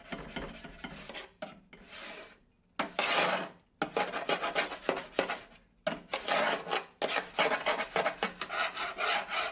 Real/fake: real